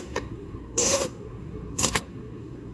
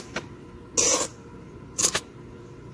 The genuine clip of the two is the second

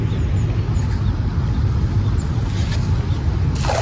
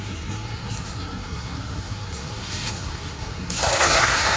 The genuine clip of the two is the first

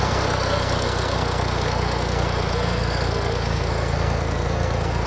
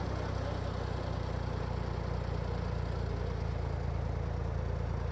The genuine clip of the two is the second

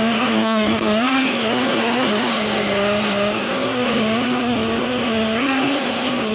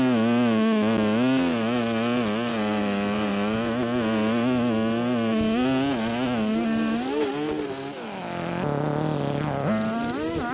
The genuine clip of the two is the second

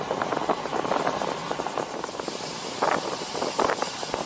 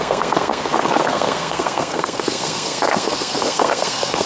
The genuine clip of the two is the first